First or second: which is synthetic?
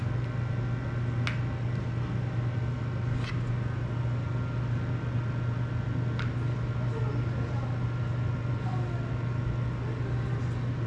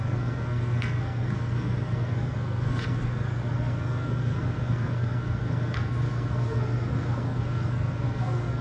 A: second